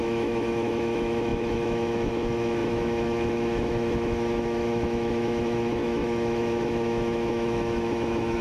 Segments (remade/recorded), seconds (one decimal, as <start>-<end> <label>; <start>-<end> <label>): 0.0-8.4 remade